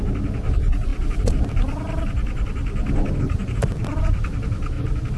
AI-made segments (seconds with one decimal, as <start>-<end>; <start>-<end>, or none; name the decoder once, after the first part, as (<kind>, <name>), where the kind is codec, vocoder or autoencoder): none